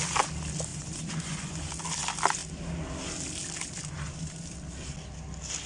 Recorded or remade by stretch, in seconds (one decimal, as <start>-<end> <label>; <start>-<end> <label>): 0.0-0.7 recorded; 0.7-1.7 remade; 1.7-5.7 recorded